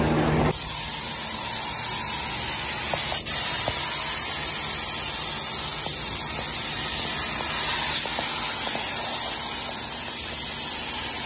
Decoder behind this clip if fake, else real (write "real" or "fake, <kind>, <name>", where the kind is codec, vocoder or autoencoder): real